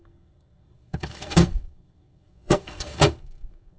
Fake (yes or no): yes